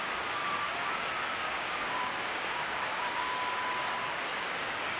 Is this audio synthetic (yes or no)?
yes